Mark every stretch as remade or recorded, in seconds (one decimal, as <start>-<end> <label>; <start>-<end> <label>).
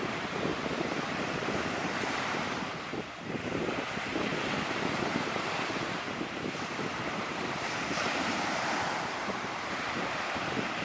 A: 0.0-0.5 remade; 0.5-1.5 recorded; 1.5-4.3 remade; 4.3-5.0 recorded; 5.0-10.8 remade